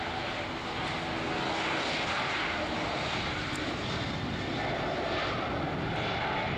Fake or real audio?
real